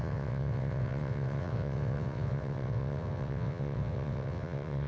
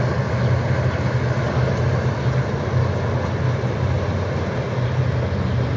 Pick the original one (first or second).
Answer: second